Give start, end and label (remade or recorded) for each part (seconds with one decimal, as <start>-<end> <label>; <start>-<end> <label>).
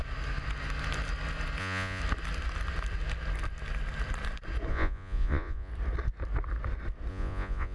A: 0.0-1.6 recorded; 1.6-2.0 remade; 2.0-4.7 recorded; 4.7-5.7 remade; 5.7-7.1 recorded; 7.1-7.7 remade